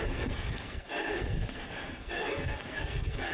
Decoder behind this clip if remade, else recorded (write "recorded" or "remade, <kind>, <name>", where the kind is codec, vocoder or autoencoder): remade, codec, SNAC